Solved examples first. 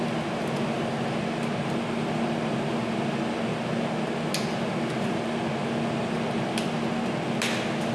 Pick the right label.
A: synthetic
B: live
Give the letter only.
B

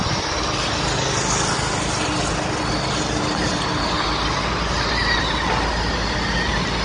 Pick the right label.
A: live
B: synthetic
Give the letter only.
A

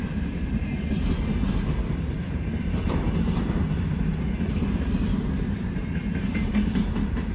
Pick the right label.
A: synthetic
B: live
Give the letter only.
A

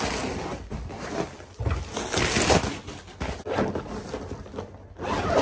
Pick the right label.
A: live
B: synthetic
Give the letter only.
A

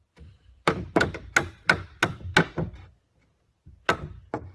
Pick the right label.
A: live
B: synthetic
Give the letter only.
B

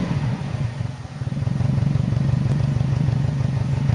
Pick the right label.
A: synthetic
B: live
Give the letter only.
A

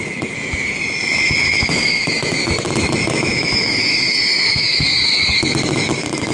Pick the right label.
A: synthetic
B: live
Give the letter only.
A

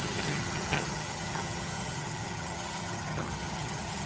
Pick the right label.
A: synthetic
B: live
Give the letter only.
A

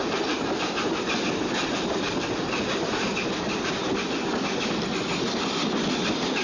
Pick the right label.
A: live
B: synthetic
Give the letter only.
A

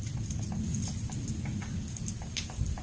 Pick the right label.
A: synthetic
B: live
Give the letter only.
B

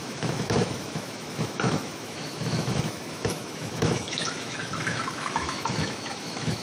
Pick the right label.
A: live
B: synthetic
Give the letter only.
B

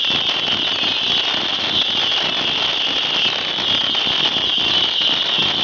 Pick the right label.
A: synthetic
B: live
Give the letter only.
B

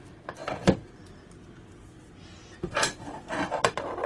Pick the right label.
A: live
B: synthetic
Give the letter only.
A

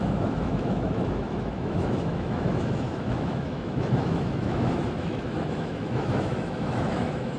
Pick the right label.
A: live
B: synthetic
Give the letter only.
B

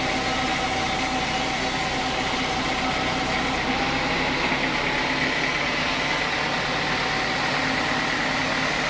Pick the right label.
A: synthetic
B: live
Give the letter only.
B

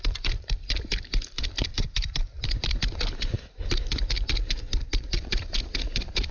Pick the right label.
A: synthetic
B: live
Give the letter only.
A